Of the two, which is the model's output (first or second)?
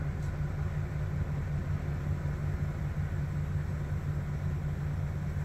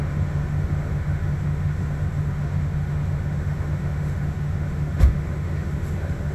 second